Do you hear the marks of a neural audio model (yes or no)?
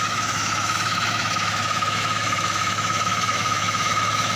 yes